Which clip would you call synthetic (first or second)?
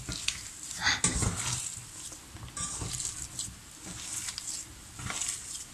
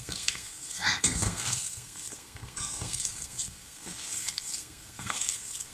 second